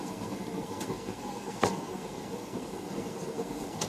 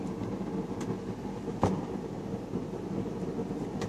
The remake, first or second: first